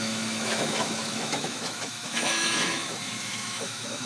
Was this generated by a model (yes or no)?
yes